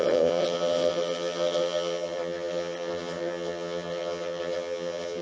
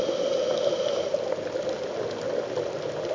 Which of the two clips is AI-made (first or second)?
first